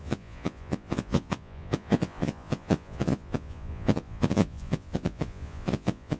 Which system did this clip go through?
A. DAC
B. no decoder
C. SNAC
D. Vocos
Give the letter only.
D